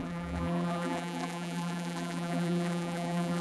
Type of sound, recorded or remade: remade